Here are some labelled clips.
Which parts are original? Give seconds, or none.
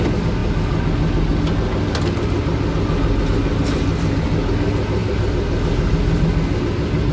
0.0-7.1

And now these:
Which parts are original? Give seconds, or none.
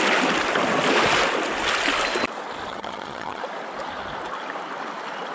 0.0-2.7; 3.4-5.3